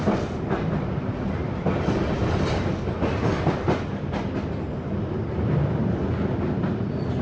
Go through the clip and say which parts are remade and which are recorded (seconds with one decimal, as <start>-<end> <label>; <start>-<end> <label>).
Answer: 0.0-7.2 recorded